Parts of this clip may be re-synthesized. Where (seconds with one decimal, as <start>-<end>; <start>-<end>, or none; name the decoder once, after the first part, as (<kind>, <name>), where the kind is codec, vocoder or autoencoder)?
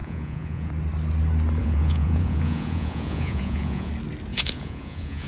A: 0.0-0.7 (vocoder, Vocos); 1.6-3.9; 4.3-5.3